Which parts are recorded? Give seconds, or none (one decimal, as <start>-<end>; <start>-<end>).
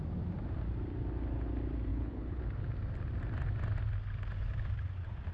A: 0.0-1.9; 2.4-5.3